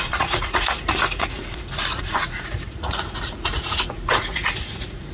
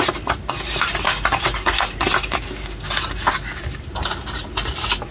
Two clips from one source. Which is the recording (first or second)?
second